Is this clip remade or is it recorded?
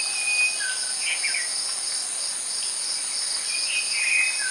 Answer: recorded